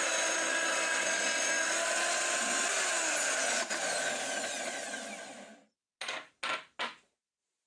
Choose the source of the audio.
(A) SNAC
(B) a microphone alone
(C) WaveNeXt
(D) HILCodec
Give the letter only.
B